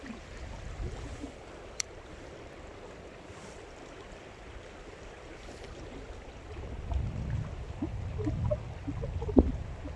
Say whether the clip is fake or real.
fake